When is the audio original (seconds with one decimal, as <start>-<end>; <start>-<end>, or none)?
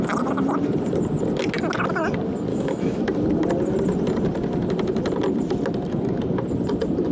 0.0-2.5; 3.0-7.1